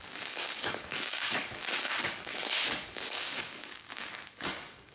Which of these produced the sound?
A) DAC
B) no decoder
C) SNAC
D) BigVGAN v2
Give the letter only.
A